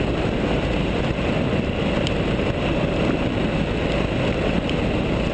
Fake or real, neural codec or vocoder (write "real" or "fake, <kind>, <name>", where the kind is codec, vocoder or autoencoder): real